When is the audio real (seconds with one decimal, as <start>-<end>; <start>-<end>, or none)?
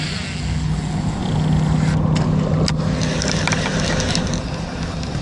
0.0-5.2